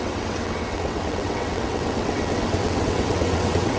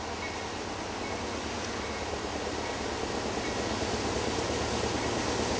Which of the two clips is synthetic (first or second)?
first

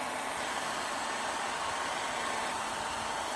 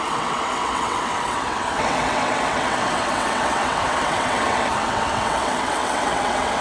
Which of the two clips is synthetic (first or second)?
second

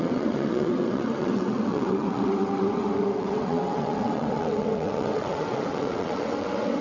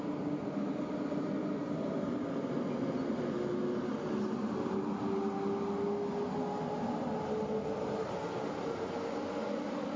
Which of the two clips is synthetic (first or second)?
first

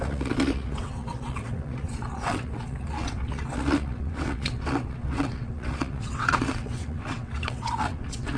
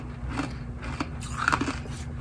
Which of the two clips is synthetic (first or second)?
first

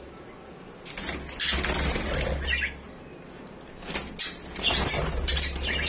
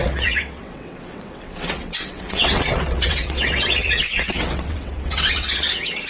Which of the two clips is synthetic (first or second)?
second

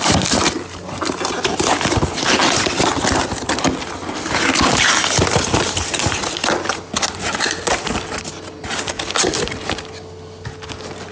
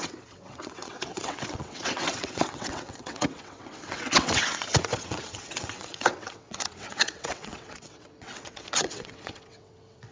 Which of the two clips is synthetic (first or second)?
second